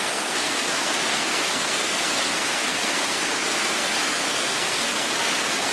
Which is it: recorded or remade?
remade